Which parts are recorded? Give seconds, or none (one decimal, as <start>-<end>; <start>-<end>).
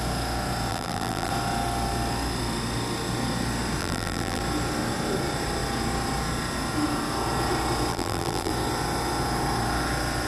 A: 0.0-0.7; 1.3-3.8; 4.4-7.9; 8.5-10.3